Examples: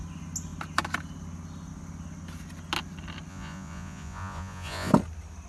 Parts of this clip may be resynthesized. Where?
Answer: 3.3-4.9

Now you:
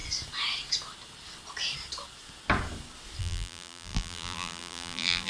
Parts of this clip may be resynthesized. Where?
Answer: 3.2-5.3

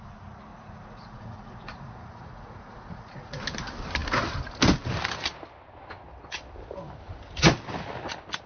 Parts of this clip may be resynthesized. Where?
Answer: 0.5-3.4

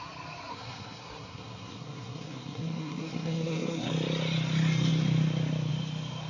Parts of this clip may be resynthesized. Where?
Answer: 0.5-3.9

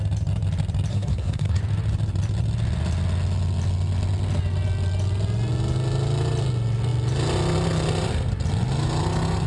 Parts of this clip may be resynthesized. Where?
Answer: 0.9-1.6

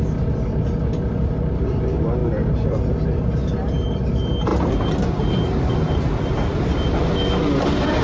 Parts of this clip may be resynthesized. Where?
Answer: 2.2-2.9; 4.5-7.1